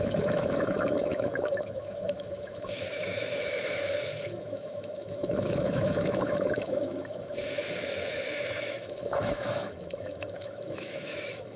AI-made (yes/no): yes